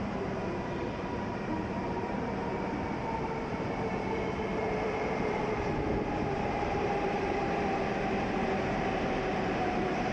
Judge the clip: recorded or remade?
remade